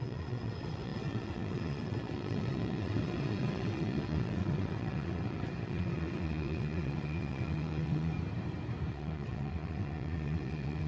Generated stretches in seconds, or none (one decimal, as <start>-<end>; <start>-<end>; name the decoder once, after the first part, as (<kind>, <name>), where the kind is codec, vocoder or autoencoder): 0.0-8.1 (vocoder, WaveNeXt); 8.9-10.9